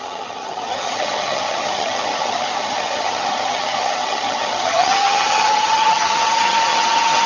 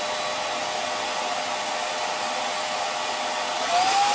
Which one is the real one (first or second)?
second